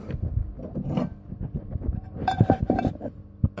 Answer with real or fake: fake